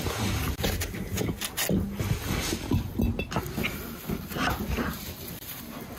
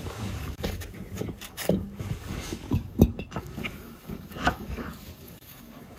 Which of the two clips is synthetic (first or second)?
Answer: second